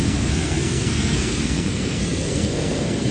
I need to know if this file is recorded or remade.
remade